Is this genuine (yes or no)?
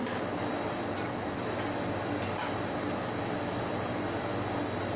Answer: yes